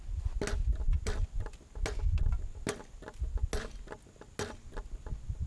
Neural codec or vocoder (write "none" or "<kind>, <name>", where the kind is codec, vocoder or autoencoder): none